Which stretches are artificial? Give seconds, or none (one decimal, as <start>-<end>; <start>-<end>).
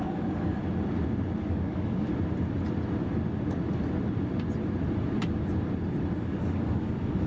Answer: 0.0-0.6; 1.4-2.1; 6.2-7.3